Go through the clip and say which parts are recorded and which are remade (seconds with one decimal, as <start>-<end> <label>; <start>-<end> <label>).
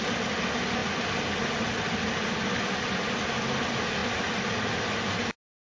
0.0-5.7 recorded